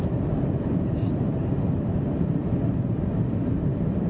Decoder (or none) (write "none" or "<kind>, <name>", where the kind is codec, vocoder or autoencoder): vocoder, BigVGAN v2